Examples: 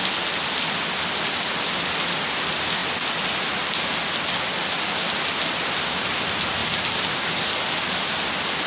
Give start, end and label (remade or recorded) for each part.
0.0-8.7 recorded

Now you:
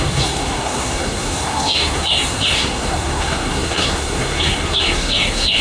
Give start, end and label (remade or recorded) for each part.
0.0-5.6 remade

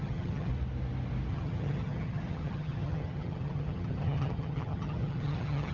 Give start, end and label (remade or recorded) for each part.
0.0-0.5 remade; 0.5-1.3 recorded; 1.3-5.7 remade

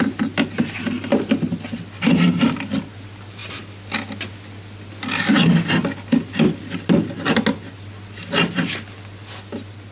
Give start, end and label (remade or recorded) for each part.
0.0-9.9 recorded

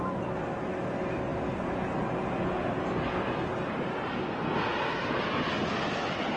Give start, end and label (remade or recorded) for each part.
0.0-6.4 recorded

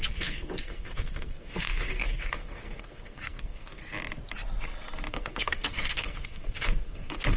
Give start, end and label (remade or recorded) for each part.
0.0-3.8 remade; 3.8-5.1 recorded; 5.1-7.4 remade

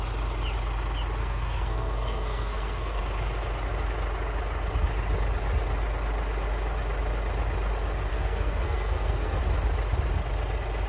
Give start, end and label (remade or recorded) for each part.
0.0-1.2 recorded; 1.2-3.0 remade; 3.0-8.1 recorded; 8.1-9.4 remade; 9.4-10.9 recorded